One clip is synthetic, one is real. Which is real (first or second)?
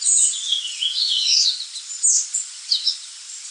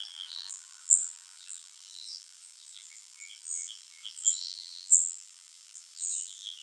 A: first